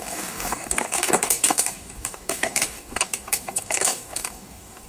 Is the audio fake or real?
fake